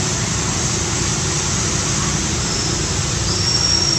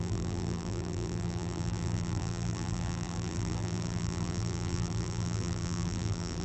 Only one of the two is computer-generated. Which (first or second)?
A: second